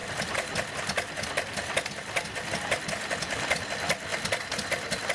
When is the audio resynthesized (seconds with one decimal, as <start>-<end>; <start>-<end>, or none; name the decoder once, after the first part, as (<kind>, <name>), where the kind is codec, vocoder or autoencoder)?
none